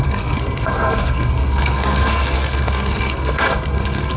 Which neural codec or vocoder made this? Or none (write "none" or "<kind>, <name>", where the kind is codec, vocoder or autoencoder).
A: codec, SNAC